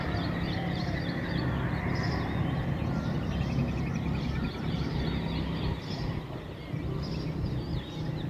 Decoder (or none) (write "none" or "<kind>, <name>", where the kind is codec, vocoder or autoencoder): none